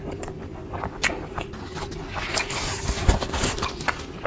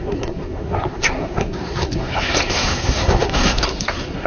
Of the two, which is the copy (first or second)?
second